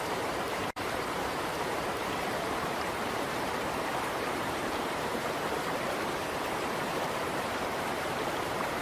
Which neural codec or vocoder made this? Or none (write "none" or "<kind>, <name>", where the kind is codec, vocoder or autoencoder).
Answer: vocoder, BigVGAN v2